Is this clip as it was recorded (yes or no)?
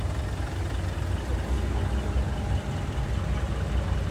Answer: yes